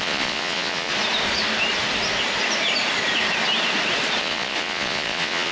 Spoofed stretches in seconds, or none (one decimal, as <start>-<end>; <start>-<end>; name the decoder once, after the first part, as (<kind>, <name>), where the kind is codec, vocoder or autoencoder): 0.0-0.9 (vocoder, Vocos); 4.2-5.5